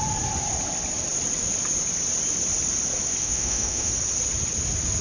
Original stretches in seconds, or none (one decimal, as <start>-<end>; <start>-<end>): 0.0-3.2; 3.9-5.0

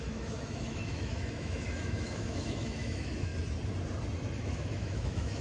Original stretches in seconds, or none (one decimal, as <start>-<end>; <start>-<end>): 3.3-4.4

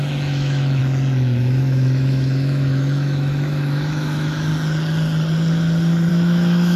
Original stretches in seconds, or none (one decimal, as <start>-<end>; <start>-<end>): 0.8-1.4; 4.5-6.1

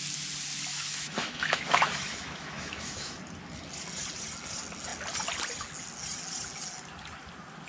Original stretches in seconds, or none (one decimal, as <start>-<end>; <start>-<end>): 0.0-0.7; 3.2-7.7